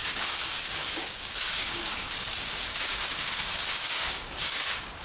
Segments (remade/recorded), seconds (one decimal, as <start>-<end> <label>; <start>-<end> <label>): 0.0-5.0 remade